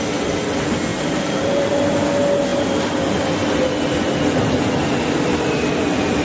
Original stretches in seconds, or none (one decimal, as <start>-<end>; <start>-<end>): 0.0-0.9; 1.7-6.2